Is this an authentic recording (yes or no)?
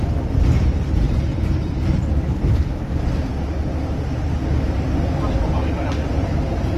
yes